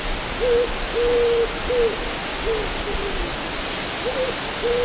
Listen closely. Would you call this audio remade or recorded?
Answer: recorded